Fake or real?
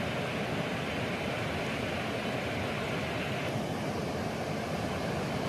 real